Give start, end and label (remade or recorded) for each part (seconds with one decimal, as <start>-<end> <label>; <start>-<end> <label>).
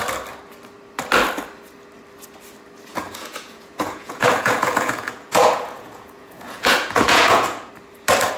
0.0-2.9 recorded; 2.9-7.7 remade; 7.7-8.4 recorded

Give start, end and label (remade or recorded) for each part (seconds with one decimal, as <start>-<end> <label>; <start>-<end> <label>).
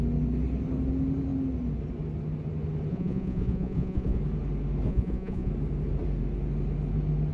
0.0-2.9 recorded; 2.9-4.2 remade; 4.2-4.9 recorded; 4.9-5.5 remade; 5.5-7.3 recorded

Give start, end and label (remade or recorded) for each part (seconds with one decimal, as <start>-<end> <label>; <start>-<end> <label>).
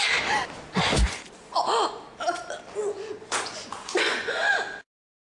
0.0-0.8 recorded; 0.8-1.6 remade; 1.6-2.8 recorded; 2.8-4.5 remade; 4.5-5.3 recorded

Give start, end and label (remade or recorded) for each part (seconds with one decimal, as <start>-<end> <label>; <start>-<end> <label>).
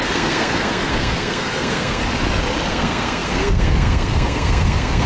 0.0-2.0 remade; 2.0-2.7 recorded; 2.7-5.1 remade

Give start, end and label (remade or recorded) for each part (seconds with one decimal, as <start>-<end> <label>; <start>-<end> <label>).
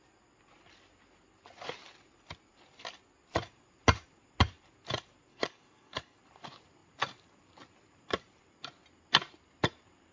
0.0-5.3 recorded; 5.3-6.2 remade; 6.2-10.1 recorded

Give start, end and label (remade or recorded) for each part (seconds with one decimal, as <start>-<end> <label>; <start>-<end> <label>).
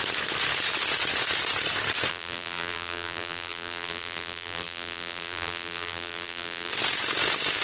0.0-2.1 recorded; 2.1-6.7 remade; 6.7-7.6 recorded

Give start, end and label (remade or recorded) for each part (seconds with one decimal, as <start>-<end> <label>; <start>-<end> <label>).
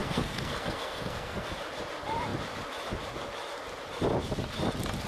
0.0-1.5 remade; 1.5-5.1 recorded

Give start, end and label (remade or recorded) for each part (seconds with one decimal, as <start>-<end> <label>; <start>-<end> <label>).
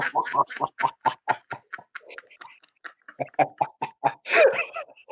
0.0-0.4 recorded; 0.4-3.3 remade; 3.3-5.1 recorded